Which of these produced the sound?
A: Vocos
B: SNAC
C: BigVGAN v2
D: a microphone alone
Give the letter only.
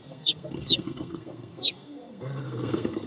B